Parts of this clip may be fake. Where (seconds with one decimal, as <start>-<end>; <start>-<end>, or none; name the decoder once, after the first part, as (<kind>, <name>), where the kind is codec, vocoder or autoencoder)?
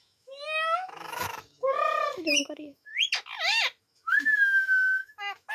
0.0-2.9 (autoencoder, DAC-VAE); 3.8-5.5